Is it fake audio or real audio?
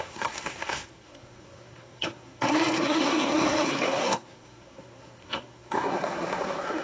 fake